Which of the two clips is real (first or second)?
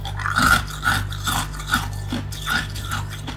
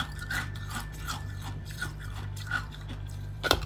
first